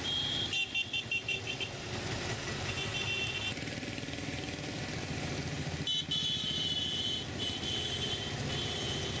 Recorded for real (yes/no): yes